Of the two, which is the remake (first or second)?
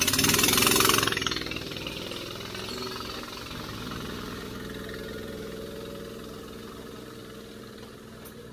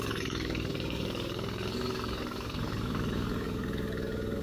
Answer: second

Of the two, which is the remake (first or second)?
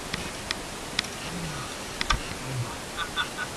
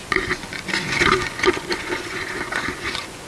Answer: second